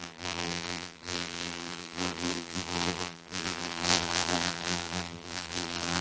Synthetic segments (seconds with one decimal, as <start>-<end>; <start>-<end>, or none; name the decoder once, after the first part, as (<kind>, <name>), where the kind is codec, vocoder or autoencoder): 0.0-6.0 (vocoder, BigVGAN v2)